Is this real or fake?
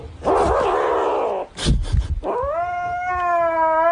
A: real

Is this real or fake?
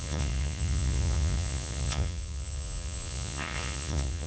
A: fake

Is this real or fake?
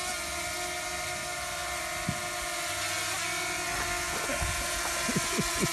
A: real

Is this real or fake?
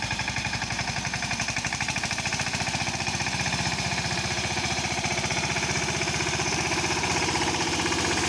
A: fake